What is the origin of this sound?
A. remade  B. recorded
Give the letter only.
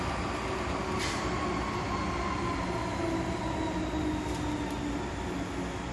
B